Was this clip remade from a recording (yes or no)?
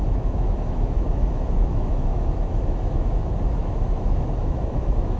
yes